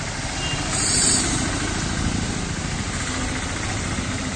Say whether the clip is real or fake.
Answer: real